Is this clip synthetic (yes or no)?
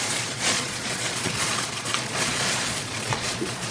yes